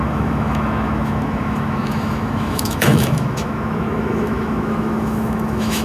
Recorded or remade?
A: remade